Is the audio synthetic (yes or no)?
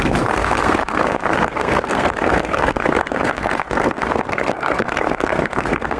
yes